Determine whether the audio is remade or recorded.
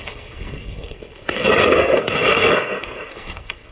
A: remade